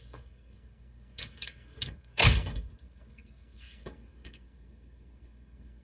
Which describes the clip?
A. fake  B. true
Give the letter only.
A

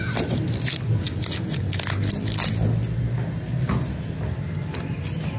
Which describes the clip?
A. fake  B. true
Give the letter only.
B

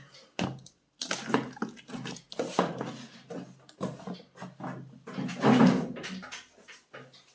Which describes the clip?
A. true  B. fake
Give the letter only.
A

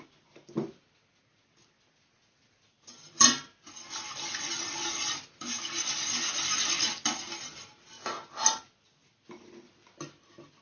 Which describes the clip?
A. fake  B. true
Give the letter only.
B